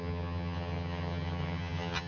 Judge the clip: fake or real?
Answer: fake